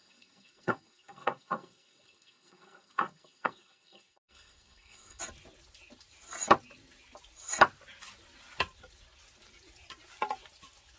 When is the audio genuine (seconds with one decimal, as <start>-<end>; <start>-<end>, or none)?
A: 5.2-11.0

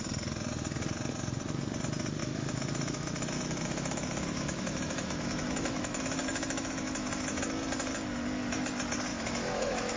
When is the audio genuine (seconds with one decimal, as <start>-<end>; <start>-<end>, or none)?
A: 0.0-2.2; 7.4-9.1

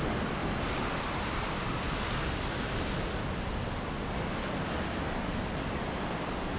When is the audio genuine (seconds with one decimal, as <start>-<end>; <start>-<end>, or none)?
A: 0.0-0.4; 2.9-6.6

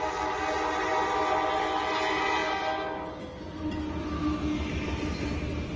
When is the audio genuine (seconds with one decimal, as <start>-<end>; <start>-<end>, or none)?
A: 0.0-5.8

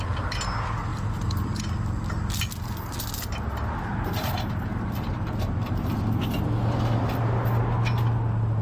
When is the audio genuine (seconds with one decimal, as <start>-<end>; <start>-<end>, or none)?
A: 0.0-0.9; 1.6-4.7; 6.2-8.6